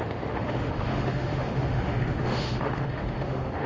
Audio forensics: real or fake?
fake